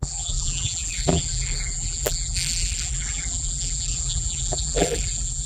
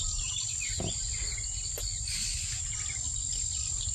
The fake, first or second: first